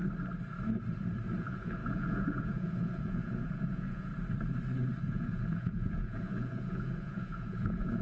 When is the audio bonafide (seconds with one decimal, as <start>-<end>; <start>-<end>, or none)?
0.0-1.4; 4.1-5.0

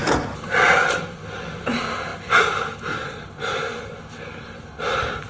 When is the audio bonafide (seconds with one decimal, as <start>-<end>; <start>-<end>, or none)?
0.0-5.3

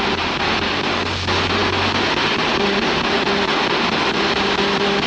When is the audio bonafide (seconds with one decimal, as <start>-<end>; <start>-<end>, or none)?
0.0-5.1

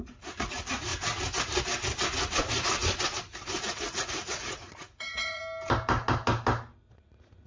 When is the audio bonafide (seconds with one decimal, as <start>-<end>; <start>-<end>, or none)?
0.9-3.5; 5.4-6.8